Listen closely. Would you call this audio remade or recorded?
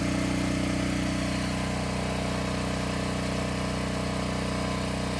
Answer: recorded